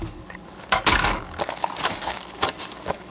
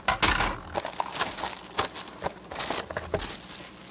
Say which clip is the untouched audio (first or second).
second